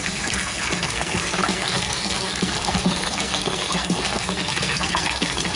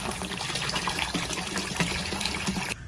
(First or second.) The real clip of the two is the second